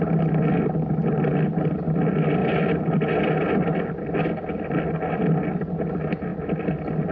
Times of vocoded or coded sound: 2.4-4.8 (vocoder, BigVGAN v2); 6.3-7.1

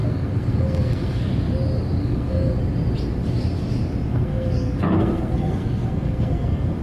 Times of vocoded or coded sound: 0.0-1.3 (codec, SNAC); 2.0-2.5; 4.1-6.8